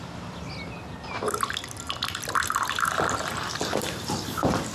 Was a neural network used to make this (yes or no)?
no